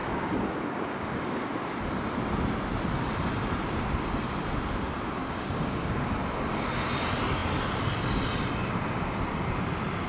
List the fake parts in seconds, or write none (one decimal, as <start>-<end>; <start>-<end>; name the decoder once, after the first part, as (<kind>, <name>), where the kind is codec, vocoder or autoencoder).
0.0-1.4 (codec, DAC); 5.2-5.9